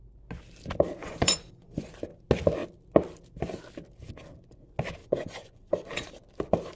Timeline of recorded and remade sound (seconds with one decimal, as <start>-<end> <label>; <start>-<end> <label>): 0.0-1.0 recorded; 1.0-1.9 remade; 1.9-5.0 recorded; 5.0-6.1 remade; 6.1-6.8 recorded